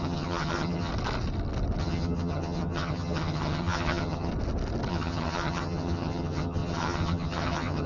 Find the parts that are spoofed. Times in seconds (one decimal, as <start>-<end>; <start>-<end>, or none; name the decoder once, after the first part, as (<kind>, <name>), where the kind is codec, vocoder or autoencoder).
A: 0.0-0.9 (vocoder, HiFi-GAN); 1.8-4.3; 4.9-7.9